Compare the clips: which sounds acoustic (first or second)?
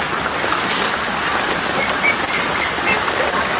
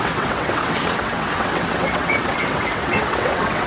first